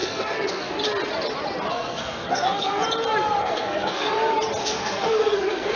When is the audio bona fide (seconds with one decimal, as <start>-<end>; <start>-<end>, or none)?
0.7-1.7; 2.8-3.4; 4.1-4.6